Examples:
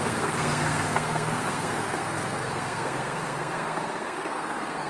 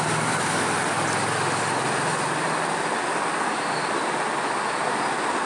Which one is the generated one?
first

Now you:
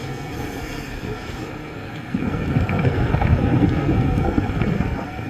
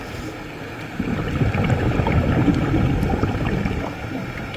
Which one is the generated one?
first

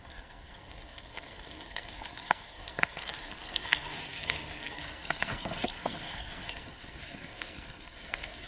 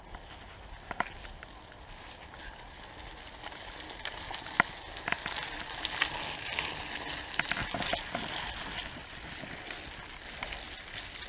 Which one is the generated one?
first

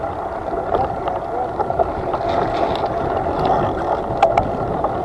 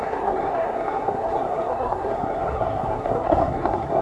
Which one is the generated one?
second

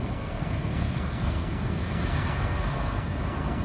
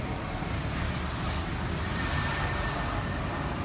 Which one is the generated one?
first